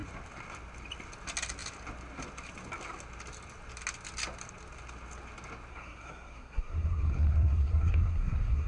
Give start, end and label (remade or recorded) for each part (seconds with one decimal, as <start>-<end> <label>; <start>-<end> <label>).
0.0-5.7 recorded; 5.7-8.7 remade